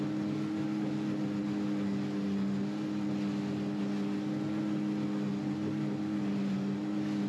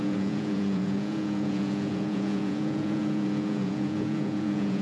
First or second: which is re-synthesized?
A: second